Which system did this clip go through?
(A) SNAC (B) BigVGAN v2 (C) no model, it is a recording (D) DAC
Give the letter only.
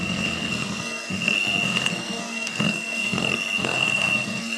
A